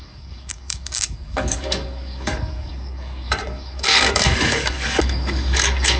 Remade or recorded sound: remade